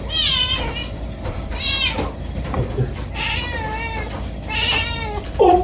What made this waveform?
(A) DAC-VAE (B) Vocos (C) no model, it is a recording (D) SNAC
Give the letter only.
C